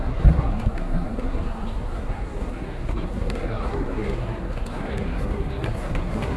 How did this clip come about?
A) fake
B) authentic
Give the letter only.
A